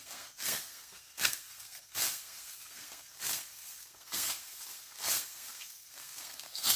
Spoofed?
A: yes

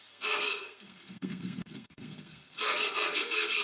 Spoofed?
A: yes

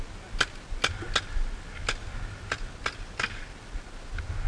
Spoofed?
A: no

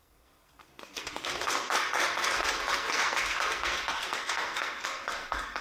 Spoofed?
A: yes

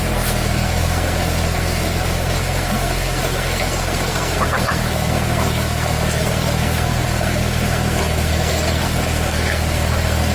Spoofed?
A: yes